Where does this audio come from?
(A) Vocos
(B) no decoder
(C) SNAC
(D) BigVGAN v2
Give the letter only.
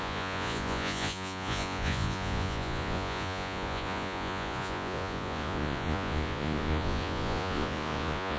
A